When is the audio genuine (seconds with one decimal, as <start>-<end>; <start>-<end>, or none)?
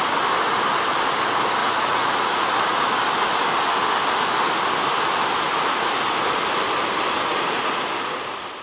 0.0-1.6; 2.8-8.6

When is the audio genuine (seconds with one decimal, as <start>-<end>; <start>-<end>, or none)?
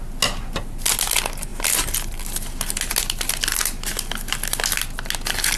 0.0-5.6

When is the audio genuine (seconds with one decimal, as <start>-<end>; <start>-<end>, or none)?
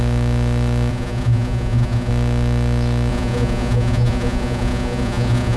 0.0-0.9; 2.1-3.1